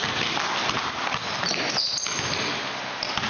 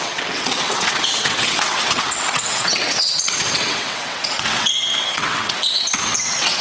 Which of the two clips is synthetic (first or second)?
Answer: second